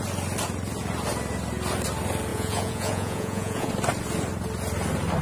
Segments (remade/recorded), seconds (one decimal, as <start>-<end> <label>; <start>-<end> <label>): 0.0-2.3 recorded; 2.3-3.7 remade; 3.7-5.2 recorded